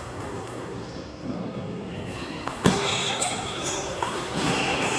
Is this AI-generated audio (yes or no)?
yes